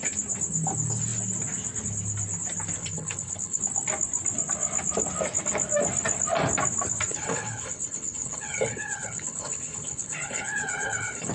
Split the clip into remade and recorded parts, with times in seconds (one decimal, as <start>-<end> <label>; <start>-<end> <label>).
0.0-2.8 recorded; 2.8-3.6 remade; 3.6-7.1 recorded; 7.1-11.3 remade